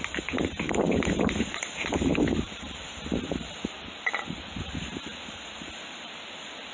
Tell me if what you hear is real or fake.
fake